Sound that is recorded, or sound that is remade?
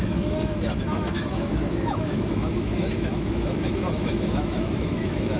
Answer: remade